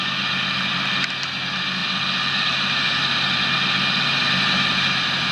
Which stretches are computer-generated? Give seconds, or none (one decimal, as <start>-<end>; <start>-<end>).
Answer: none